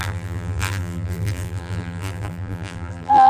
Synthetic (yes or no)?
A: yes